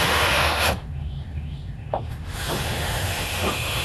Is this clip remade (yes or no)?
yes